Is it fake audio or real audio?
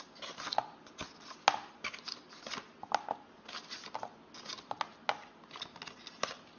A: real